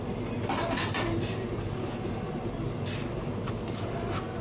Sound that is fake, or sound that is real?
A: real